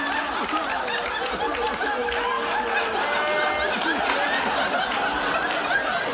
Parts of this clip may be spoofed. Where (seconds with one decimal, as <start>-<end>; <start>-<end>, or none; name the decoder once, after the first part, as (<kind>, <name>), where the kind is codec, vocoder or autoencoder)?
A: none